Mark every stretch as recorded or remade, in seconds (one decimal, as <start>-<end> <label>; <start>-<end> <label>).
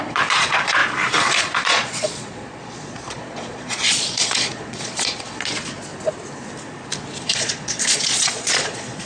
0.0-0.8 remade; 0.8-1.4 recorded; 1.4-5.9 remade; 5.9-7.2 recorded; 7.2-9.1 remade